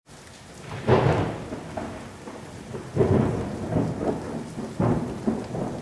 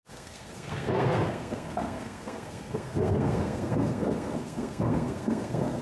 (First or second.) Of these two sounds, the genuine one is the first